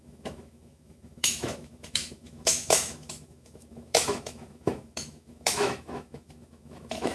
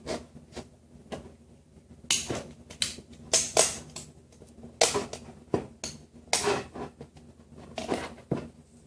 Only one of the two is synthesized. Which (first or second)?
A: first